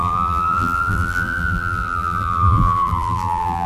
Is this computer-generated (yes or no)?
yes